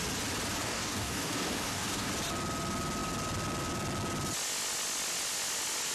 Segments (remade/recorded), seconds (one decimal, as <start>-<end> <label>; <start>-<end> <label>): 0.0-0.6 recorded; 0.6-2.1 remade; 2.1-5.9 recorded